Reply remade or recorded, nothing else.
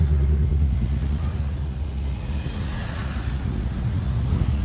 remade